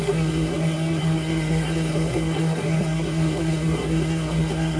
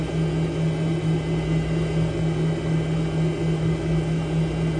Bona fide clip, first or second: second